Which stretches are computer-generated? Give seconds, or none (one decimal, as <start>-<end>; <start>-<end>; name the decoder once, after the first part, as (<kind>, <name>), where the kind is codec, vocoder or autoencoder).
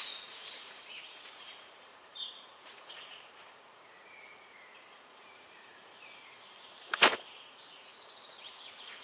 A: 0.0-9.0 (vocoder, Vocos)